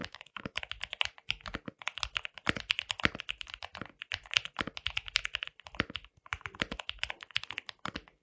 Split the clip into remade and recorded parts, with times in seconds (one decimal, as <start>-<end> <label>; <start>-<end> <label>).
0.0-0.6 remade; 0.6-8.2 recorded